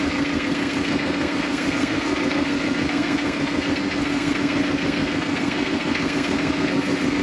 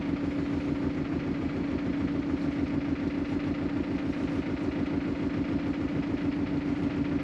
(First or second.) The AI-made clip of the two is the first